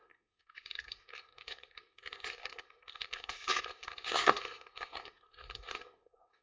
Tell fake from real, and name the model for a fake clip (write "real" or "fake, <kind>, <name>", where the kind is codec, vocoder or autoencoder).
fake, codec, SNAC